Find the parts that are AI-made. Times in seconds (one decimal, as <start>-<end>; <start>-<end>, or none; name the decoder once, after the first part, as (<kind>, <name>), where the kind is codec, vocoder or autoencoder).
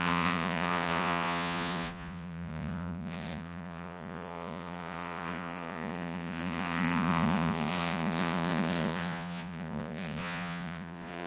0.0-11.3 (vocoder, Vocos)